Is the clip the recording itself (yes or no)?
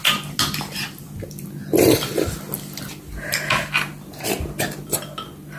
yes